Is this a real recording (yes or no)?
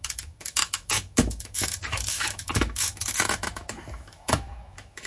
no